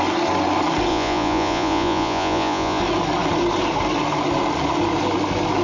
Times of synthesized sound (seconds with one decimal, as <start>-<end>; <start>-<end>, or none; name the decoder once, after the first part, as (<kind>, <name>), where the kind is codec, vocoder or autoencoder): 0.9-2.8 (vocoder, Vocos)